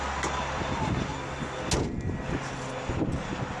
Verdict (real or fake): real